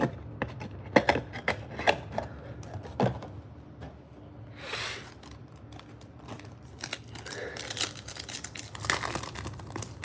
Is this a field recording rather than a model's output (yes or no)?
yes